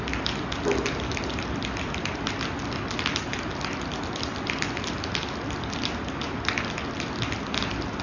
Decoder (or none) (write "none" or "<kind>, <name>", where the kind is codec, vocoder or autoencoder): none